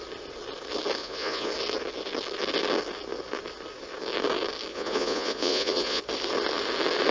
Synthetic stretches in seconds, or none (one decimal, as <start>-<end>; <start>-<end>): 1.0-1.5; 4.7-6.0